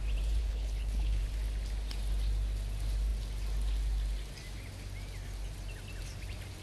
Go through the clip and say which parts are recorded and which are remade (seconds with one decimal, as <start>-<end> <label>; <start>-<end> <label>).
0.0-0.4 recorded; 0.4-1.2 remade; 1.2-6.6 recorded